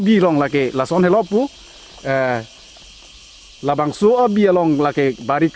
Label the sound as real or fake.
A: real